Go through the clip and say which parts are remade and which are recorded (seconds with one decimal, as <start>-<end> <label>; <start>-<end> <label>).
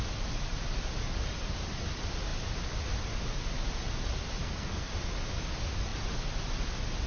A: 0.0-4.4 recorded; 4.4-4.9 remade; 4.9-7.1 recorded